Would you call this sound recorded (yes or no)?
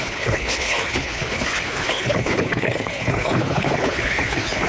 no